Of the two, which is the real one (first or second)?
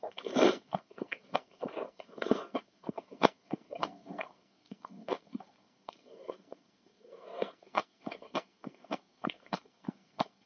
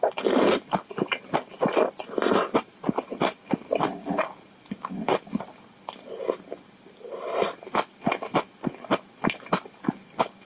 second